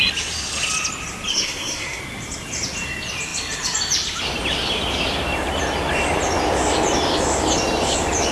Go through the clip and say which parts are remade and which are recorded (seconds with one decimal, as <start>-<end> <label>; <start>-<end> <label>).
0.0-1.3 recorded; 1.3-2.0 remade; 2.0-8.3 recorded